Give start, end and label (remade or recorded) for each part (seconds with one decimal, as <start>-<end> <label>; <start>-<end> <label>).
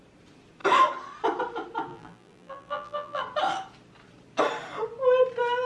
0.0-1.9 recorded; 1.9-3.2 remade; 3.2-5.7 recorded